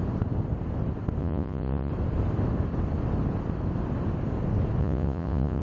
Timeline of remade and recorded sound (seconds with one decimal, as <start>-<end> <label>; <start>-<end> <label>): 0.0-1.2 recorded; 1.2-1.9 remade; 1.9-4.8 recorded; 4.8-5.6 remade